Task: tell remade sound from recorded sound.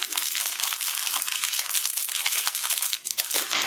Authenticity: remade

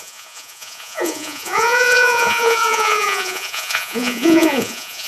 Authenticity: remade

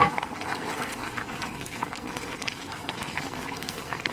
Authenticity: remade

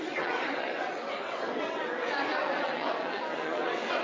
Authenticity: remade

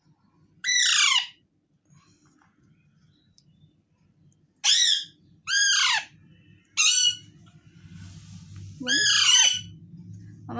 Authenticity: recorded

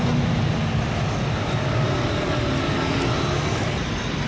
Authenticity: recorded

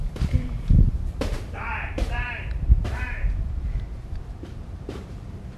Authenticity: remade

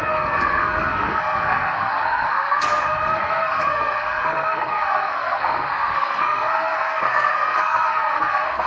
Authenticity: remade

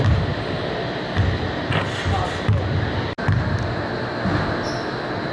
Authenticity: recorded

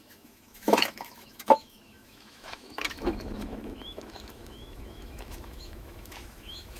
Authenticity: remade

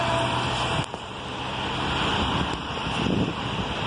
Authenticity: remade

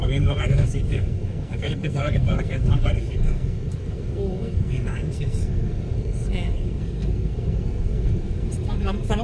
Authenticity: remade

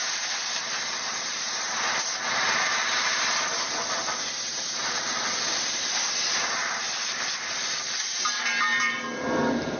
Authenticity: remade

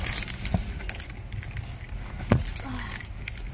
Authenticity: recorded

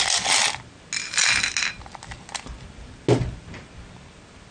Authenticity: recorded